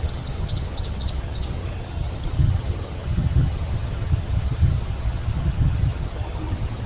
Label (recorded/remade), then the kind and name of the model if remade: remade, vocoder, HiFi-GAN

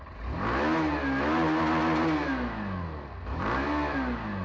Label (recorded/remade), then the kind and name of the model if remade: recorded